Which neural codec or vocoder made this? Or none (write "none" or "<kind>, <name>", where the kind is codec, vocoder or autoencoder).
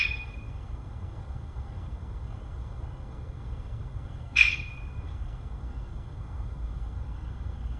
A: codec, SNAC